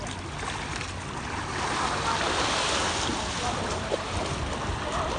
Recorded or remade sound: recorded